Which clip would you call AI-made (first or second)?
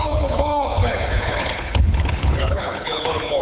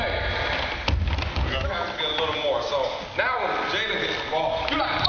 first